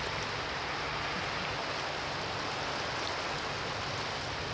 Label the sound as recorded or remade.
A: recorded